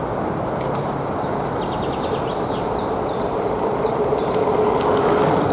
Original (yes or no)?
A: yes